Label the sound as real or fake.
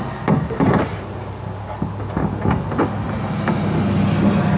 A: real